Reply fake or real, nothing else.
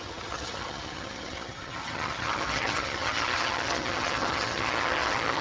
fake